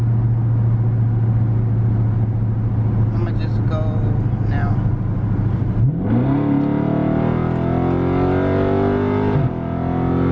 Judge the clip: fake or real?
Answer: real